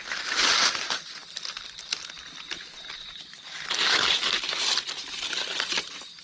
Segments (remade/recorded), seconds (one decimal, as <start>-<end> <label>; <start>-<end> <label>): 0.0-6.2 recorded